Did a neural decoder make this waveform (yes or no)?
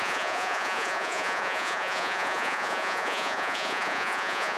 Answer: yes